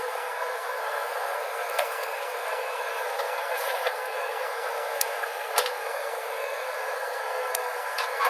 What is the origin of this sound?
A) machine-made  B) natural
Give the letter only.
A